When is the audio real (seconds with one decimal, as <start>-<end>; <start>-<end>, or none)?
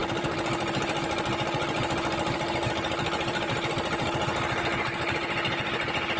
3.7-6.2